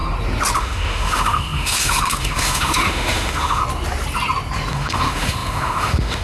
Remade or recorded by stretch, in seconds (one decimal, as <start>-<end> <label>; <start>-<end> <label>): 0.0-0.6 recorded; 0.6-3.6 remade; 3.6-4.7 recorded; 4.7-6.2 remade